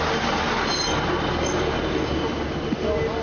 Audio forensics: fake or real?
real